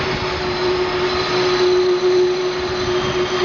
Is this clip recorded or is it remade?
recorded